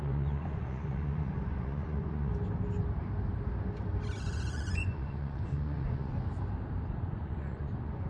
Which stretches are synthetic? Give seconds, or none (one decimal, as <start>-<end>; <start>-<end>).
0.0-2.3; 4.2-6.1; 6.8-8.1